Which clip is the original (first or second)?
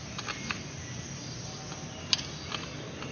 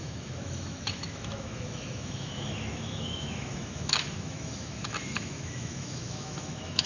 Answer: first